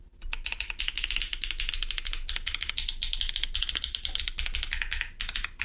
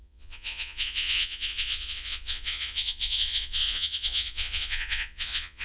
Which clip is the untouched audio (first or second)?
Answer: first